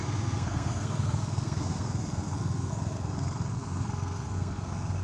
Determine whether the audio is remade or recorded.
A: remade